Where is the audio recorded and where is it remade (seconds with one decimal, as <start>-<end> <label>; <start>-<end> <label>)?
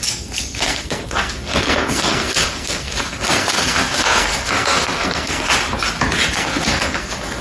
0.0-5.5 remade; 5.5-6.3 recorded; 6.3-7.4 remade